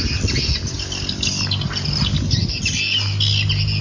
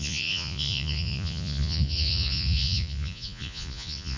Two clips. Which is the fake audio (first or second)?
second